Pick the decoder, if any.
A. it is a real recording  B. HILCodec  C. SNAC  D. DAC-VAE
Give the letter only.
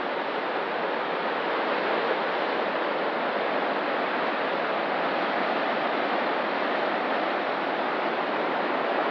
A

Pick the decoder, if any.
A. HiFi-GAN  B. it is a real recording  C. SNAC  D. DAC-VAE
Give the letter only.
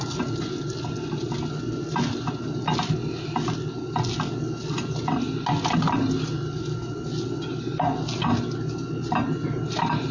B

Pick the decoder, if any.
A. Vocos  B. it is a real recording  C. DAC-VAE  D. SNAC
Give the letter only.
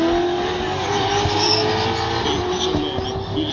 B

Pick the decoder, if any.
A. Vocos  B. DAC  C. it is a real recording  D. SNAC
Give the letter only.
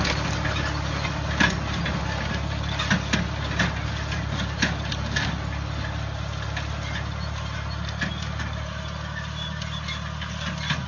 C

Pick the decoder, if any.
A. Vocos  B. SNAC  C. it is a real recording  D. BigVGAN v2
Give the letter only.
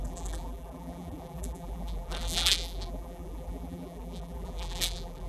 D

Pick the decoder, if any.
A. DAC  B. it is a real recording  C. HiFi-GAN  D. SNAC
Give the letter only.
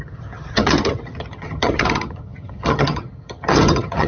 C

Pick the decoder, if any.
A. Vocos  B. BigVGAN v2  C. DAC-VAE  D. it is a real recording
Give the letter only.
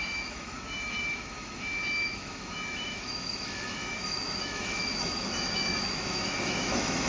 C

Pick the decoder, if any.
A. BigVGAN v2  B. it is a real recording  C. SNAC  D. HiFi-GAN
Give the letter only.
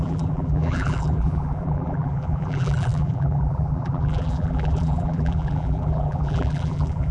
A